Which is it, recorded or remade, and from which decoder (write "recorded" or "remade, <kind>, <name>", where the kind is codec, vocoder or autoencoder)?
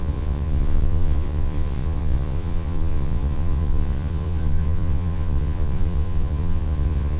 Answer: remade, vocoder, Vocos